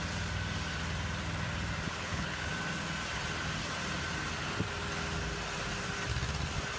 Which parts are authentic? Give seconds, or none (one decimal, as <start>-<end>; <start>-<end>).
0.0-1.9; 2.5-6.8